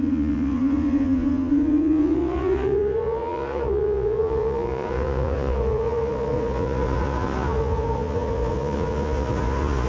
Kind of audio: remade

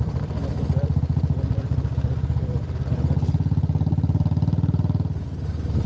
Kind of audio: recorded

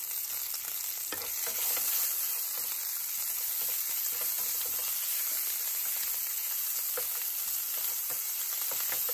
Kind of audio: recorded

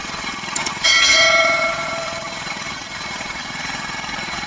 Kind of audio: remade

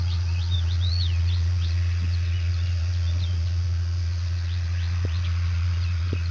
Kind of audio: remade